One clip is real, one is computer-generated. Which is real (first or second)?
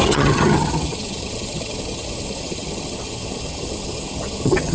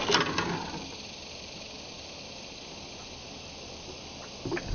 second